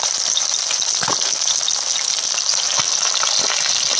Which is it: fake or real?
real